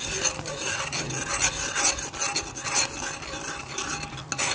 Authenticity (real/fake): real